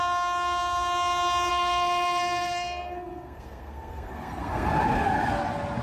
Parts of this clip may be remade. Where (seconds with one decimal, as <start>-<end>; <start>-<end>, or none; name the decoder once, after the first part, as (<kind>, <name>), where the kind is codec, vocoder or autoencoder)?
1.5-4.7 (codec, SNAC)